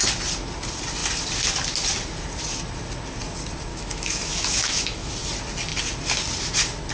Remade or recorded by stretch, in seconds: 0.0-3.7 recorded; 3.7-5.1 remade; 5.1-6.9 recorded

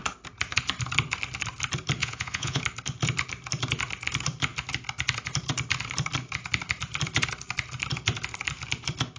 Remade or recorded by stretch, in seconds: 0.0-2.0 recorded; 2.0-2.6 remade; 2.6-9.2 recorded

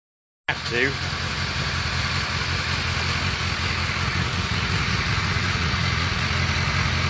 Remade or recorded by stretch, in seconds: 0.0-4.1 recorded; 4.1-6.3 remade; 6.3-7.1 recorded

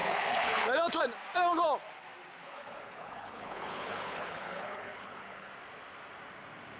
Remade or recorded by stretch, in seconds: 0.0-1.0 remade; 1.0-2.4 recorded; 2.4-5.5 remade; 5.5-6.8 recorded

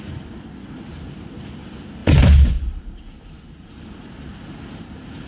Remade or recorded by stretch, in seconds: 0.0-2.0 recorded; 2.0-5.3 remade

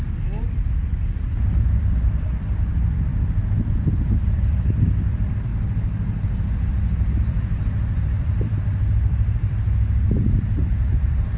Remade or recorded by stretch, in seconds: 0.0-5.5 remade; 5.5-7.2 recorded; 7.2-11.4 remade

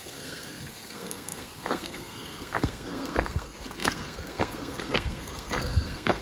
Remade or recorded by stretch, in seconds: 0.0-6.2 remade

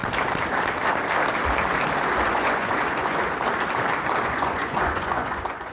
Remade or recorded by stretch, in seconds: 0.0-2.3 recorded; 2.3-3.2 remade; 3.2-4.2 recorded; 4.2-5.7 remade